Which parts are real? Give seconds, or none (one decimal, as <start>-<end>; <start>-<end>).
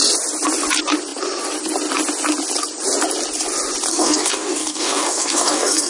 0.0-3.9